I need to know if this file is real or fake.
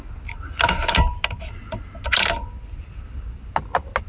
real